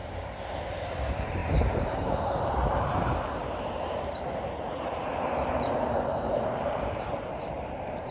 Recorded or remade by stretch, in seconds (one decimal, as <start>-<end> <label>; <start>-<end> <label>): 0.0-8.1 remade